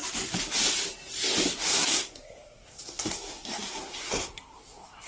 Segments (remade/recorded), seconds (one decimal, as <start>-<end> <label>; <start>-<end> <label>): 0.0-1.7 recorded; 1.7-5.1 remade